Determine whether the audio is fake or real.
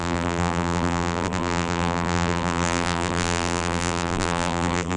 fake